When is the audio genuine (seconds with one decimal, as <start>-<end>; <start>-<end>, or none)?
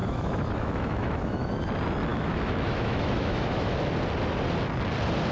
1.5-2.1; 3.7-5.3